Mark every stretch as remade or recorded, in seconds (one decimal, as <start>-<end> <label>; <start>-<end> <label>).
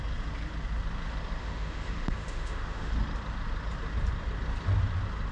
0.0-1.4 recorded; 1.4-2.9 remade; 2.9-5.3 recorded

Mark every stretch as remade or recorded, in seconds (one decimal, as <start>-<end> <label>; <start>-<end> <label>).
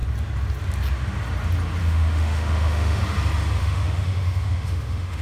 0.0-1.8 recorded; 1.8-3.0 remade; 3.0-3.6 recorded; 3.6-5.2 remade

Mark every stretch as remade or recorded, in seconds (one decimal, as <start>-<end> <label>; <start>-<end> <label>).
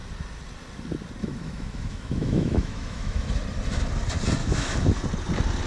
0.0-1.2 recorded; 1.2-3.3 remade; 3.3-4.4 recorded; 4.4-4.9 remade; 4.9-5.7 recorded